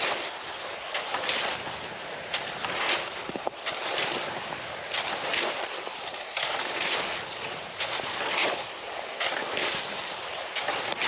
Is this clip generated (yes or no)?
no